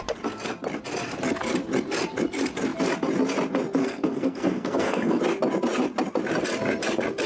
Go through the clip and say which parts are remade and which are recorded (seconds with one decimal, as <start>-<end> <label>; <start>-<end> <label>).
0.0-3.8 recorded; 3.8-5.2 remade; 5.2-7.3 recorded